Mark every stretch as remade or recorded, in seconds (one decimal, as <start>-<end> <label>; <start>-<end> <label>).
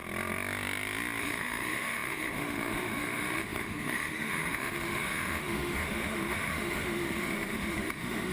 0.0-1.2 recorded; 1.2-8.3 remade